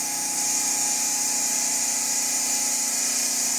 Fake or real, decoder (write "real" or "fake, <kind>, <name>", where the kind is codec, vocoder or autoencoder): fake, vocoder, BigVGAN v2